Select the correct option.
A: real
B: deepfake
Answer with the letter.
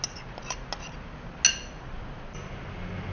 A